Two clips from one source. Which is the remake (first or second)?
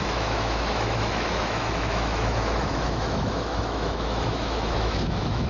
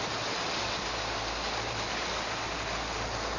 first